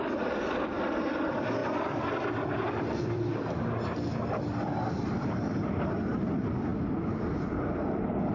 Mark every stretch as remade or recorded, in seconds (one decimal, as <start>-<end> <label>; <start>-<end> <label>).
0.0-6.7 remade; 6.7-7.3 recorded; 7.3-8.3 remade